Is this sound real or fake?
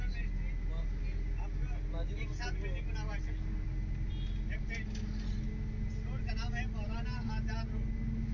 real